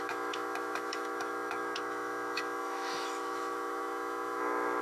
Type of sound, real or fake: fake